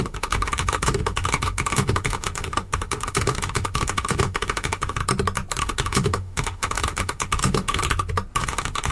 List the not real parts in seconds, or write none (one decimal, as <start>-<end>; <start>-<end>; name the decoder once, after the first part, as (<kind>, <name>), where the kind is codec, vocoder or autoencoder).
0.0-5.0 (autoencoder, DAC-VAE); 5.6-7.8; 8.4-8.9